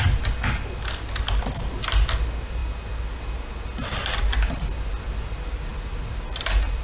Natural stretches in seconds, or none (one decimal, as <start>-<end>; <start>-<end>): 0.0-6.8

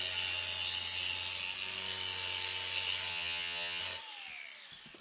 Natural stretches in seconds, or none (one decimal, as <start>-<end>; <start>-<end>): 0.0-3.1; 3.8-5.0

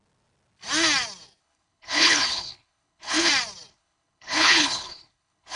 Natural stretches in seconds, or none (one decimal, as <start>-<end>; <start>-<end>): 0.0-1.4; 3.3-3.7

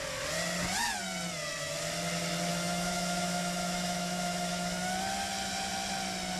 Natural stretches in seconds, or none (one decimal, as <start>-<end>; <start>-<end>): 0.0-2.5; 4.9-6.4

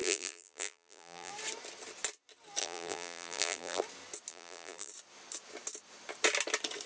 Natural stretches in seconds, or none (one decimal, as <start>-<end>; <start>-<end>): 1.3-2.6; 3.8-4.3; 4.9-6.9

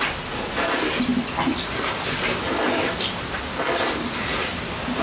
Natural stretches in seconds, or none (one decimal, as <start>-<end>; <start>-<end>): 0.0-5.0

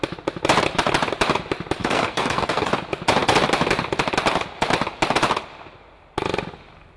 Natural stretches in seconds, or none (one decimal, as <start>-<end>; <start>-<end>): 0.0-1.8; 2.7-7.0